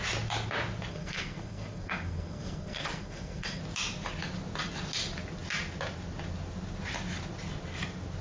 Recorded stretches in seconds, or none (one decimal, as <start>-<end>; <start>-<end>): 0.0-0.9; 3.6-8.2